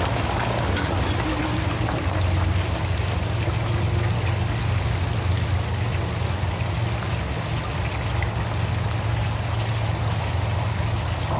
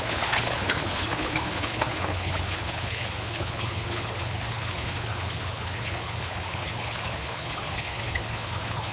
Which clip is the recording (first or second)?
first